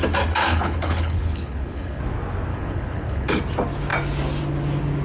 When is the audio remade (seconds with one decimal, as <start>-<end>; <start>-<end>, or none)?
0.4-2.0; 2.5-3.4